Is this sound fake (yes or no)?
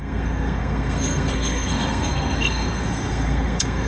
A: yes